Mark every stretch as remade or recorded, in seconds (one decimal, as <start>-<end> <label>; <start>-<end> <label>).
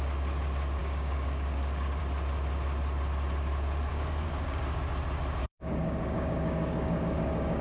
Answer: 0.0-0.8 recorded; 0.8-2.0 remade; 2.0-3.9 recorded; 3.9-4.8 remade; 4.8-5.4 recorded; 5.4-7.6 remade